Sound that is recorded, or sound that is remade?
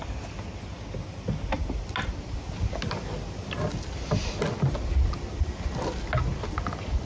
recorded